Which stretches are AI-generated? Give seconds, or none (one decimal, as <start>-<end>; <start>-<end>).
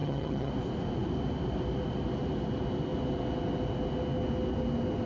0.0-0.5